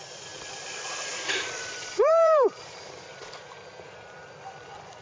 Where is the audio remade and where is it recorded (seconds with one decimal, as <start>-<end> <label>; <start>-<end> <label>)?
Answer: 0.0-1.1 recorded; 1.1-3.6 remade; 3.6-5.0 recorded